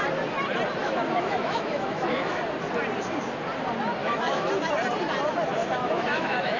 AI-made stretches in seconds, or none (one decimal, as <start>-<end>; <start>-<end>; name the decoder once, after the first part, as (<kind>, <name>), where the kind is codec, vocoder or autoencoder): 0.8-2.4 (autoencoder, DAC-VAE); 4.0-4.5; 5.6-6.6